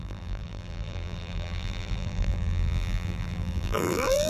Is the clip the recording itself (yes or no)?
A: no